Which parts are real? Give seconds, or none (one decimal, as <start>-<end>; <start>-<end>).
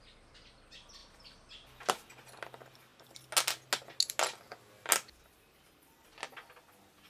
0.0-7.1